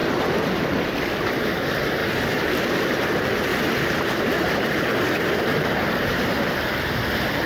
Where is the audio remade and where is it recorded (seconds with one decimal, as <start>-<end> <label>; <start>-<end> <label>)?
0.0-2.0 recorded; 2.0-2.6 remade; 2.6-3.5 recorded; 3.5-6.4 remade; 6.4-7.5 recorded